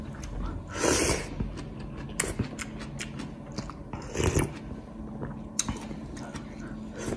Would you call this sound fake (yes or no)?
no